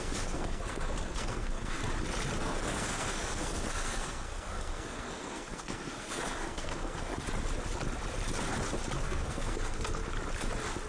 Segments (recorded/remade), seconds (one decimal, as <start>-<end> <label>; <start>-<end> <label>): 0.0-1.8 remade; 1.8-2.4 recorded; 2.4-7.1 remade; 7.1-9.0 recorded; 9.0-10.0 remade; 10.0-10.9 recorded